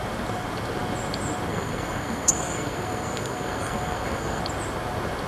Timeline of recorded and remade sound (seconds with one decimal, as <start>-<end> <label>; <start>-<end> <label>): 0.0-1.5 recorded; 1.5-4.4 remade; 4.4-5.3 recorded